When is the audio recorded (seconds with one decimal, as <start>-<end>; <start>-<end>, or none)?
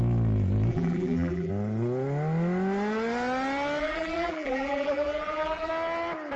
0.0-0.7; 1.5-3.8; 5.7-6.4